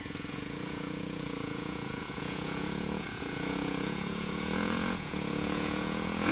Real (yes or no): no